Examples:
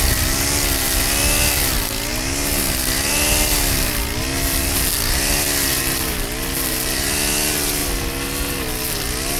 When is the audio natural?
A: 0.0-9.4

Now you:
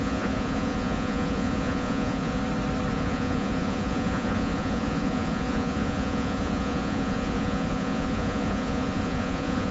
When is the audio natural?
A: 2.4-2.9